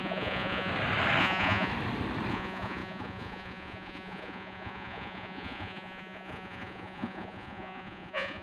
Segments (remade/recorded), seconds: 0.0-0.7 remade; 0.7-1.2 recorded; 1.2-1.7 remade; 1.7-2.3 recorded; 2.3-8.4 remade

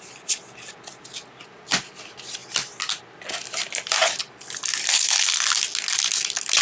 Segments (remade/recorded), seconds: 0.0-6.6 recorded